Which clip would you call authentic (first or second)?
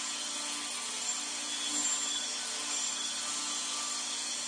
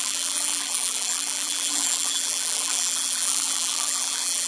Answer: first